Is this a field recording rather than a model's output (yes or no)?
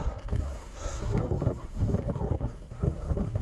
no